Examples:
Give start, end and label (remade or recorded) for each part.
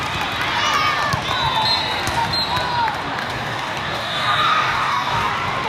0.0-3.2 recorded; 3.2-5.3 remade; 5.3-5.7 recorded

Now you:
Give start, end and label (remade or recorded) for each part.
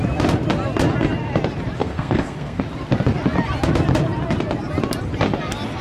0.0-1.8 recorded; 1.8-2.6 remade; 2.6-5.8 recorded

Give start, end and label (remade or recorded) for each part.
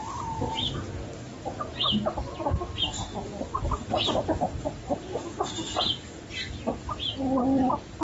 0.0-3.1 recorded; 3.1-5.0 remade; 5.0-7.4 recorded; 7.4-8.0 remade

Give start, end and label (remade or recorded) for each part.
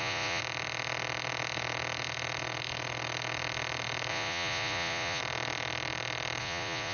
0.0-0.4 remade; 0.4-4.1 recorded; 4.1-5.2 remade; 5.2-6.4 recorded; 6.4-6.9 remade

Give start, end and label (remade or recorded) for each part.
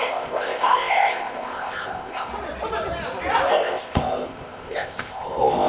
0.0-2.3 remade; 2.3-3.5 recorded; 3.5-5.7 remade